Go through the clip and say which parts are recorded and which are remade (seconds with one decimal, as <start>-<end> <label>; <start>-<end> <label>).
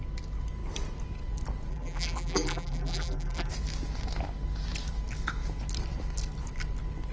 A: 0.0-1.7 recorded; 1.7-3.5 remade; 3.5-7.1 recorded